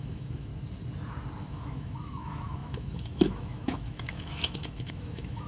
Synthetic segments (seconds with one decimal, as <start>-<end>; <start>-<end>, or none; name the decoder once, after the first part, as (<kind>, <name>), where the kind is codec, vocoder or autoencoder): 0.0-0.5 (autoencoder, DAC-VAE); 1.4-5.5